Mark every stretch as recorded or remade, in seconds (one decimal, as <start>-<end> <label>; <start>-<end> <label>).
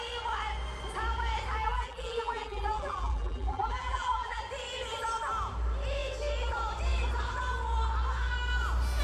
0.0-1.6 recorded; 1.6-4.4 remade; 4.4-9.0 recorded